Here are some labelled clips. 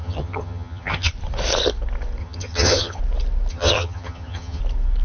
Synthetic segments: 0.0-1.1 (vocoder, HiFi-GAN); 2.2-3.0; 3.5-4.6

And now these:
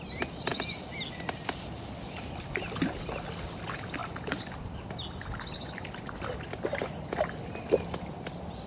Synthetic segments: none

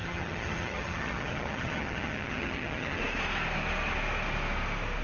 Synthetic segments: 0.0-3.0 (vocoder, HiFi-GAN)